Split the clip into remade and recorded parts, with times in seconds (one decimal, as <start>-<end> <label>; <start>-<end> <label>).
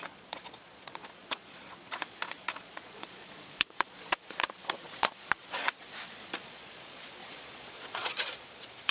0.0-8.9 remade